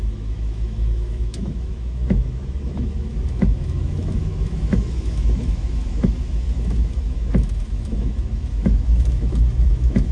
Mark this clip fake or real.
fake